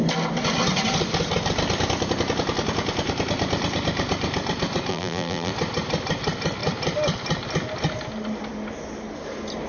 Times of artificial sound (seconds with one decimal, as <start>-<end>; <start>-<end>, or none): 4.9-5.5